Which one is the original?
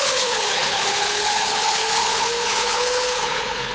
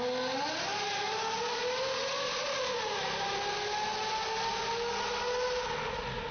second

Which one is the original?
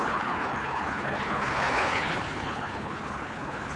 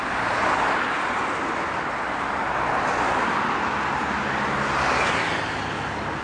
second